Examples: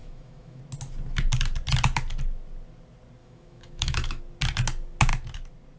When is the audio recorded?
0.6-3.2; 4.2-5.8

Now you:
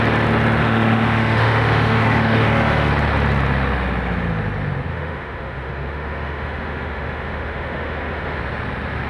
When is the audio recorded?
0.0-0.6; 2.9-4.9; 8.4-9.1

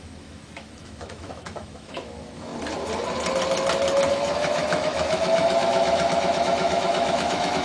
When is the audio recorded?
2.5-4.1

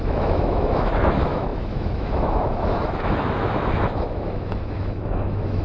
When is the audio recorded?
none

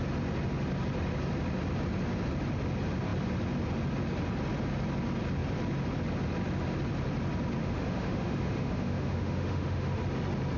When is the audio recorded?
0.0-7.6; 10.0-10.6

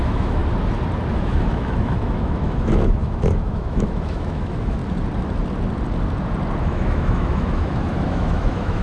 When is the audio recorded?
0.4-1.1; 4.8-6.6

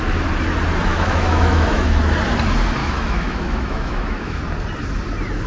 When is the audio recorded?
0.0-0.9; 2.0-2.8; 4.4-5.5

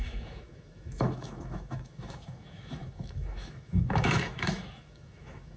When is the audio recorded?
none